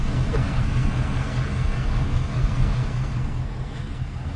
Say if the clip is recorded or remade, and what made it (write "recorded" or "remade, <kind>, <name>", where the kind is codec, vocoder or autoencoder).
remade, codec, SNAC